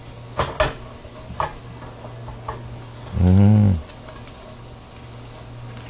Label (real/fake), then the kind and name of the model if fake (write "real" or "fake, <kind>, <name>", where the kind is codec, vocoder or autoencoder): real